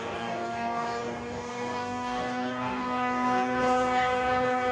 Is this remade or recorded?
remade